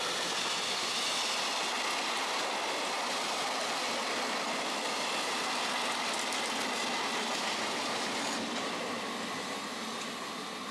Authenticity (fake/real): real